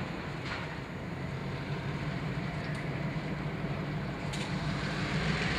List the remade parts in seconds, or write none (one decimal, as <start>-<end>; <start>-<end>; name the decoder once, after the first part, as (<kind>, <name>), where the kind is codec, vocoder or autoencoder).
0.0-1.4 (vocoder, BigVGAN v2); 2.0-5.6

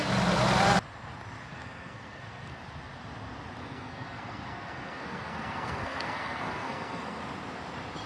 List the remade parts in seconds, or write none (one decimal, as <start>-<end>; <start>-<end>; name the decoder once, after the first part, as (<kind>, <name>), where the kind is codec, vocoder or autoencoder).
1.5-2.6 (codec, SNAC); 3.6-7.2

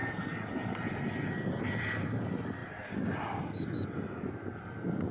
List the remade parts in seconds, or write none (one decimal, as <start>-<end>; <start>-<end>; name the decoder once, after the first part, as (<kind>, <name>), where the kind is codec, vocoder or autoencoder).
none

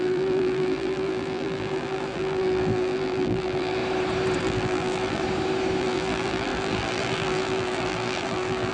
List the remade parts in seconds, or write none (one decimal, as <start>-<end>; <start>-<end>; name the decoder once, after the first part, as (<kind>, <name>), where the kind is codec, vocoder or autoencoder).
0.0-3.8 (vocoder, BigVGAN v2); 4.4-5.2; 5.8-8.7

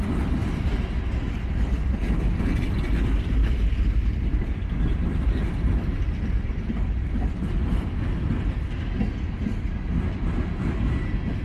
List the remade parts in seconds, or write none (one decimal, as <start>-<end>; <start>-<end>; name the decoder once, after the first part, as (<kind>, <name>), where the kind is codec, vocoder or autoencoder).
3.4-8.0 (vocoder, BigVGAN v2)